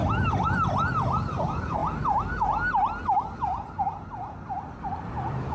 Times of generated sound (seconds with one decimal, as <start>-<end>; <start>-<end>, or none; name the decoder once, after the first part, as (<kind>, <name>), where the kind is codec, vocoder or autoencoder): 0.0-1.8 (vocoder, BigVGAN v2); 5.1-5.5